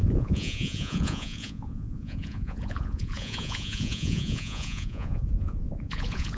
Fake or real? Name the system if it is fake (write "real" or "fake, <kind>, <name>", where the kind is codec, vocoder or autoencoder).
fake, vocoder, Vocos